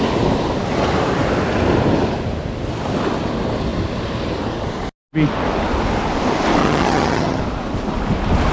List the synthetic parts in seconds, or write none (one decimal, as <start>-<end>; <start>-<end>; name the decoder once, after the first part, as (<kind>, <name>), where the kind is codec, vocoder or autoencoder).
6.6-7.4 (vocoder, HiFi-GAN)